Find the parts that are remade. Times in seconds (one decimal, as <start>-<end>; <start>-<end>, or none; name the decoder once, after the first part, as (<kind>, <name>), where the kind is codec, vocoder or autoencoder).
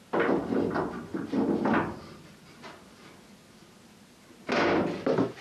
none